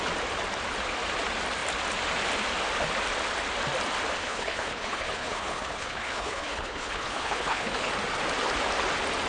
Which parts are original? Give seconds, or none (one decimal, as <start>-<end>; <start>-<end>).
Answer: 0.0-4.2; 7.9-9.3

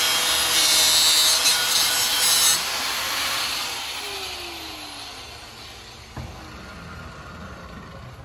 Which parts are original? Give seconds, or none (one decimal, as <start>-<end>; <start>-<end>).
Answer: 0.0-8.2